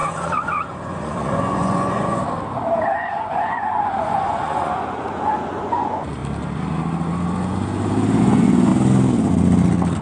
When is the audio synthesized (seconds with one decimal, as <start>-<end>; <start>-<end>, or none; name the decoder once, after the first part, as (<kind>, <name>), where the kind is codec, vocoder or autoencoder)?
0.0-2.2 (vocoder, Vocos); 2.9-6.2; 8.2-8.7